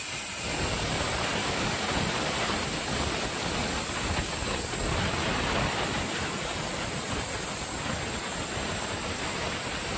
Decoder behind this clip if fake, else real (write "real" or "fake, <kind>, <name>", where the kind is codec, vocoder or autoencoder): real